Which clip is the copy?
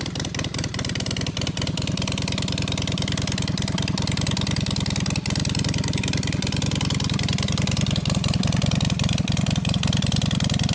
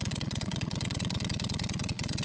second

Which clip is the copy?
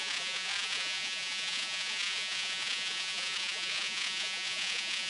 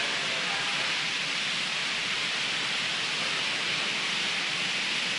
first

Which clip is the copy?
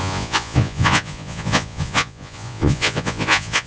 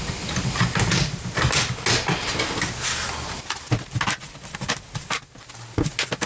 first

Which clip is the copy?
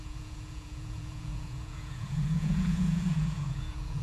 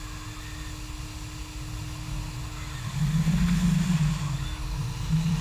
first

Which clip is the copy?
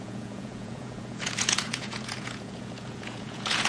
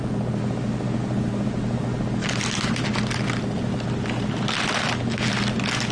first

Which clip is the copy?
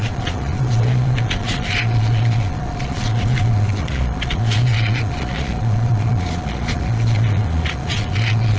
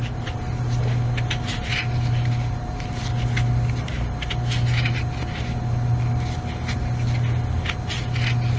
first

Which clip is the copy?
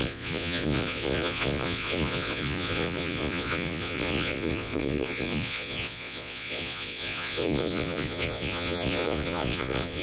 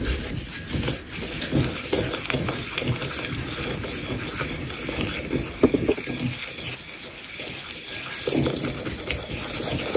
first